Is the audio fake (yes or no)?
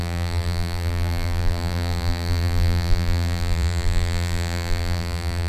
yes